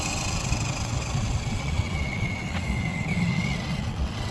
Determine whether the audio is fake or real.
fake